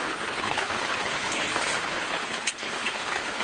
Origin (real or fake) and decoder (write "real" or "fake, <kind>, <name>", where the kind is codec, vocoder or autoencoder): fake, codec, HILCodec